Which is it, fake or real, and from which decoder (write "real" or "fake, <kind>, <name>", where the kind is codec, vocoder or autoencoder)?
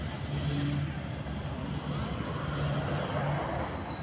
real